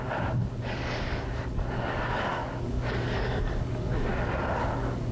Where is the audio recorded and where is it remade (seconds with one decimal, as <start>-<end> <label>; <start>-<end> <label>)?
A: 0.0-5.1 remade